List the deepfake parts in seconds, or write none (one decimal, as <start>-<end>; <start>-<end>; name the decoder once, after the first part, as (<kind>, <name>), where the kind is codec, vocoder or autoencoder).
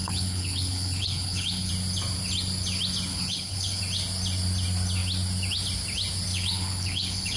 0.0-1.7 (codec, HILCodec); 3.1-3.8; 6.3-7.4